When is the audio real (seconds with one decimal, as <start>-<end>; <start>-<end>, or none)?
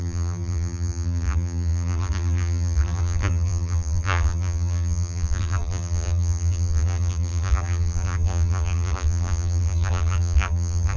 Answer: none